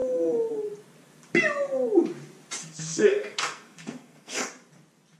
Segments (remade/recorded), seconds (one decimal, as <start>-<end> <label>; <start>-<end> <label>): 0.0-2.6 recorded; 2.6-4.5 remade; 4.5-5.2 recorded